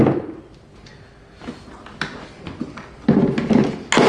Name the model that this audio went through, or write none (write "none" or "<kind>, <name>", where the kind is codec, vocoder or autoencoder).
none